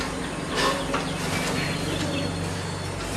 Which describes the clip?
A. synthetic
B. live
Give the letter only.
B